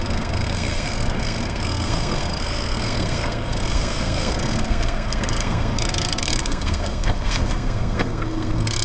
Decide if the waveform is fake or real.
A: fake